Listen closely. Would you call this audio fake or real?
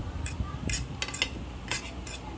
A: real